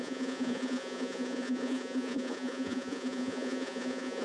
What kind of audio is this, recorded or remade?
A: remade